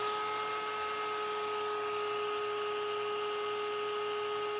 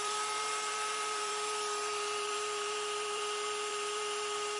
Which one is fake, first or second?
second